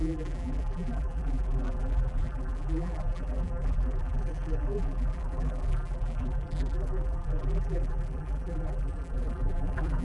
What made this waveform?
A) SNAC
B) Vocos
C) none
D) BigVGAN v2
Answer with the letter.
D